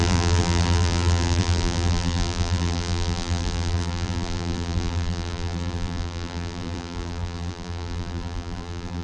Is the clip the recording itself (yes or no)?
no